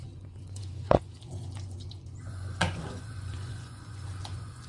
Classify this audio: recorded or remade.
remade